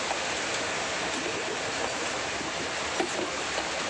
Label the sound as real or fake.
real